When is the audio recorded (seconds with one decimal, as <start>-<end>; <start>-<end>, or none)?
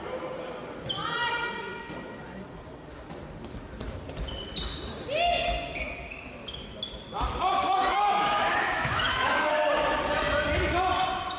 0.0-7.6; 9.5-11.4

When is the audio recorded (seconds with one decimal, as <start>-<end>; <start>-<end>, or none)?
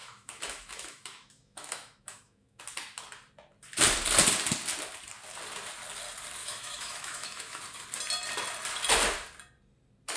2.6-6.4; 7.6-10.2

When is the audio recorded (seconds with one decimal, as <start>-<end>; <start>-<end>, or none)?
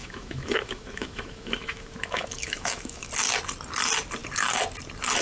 3.1-5.2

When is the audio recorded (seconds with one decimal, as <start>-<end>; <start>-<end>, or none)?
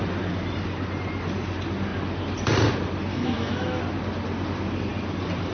0.0-3.1; 3.8-5.5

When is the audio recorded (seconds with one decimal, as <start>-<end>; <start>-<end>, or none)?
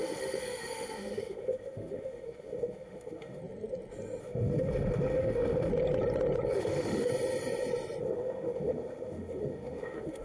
3.4-4.2; 5.7-6.5; 7.1-8.0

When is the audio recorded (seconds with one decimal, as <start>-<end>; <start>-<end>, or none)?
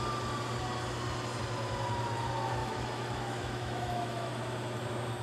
0.0-2.6; 4.3-5.2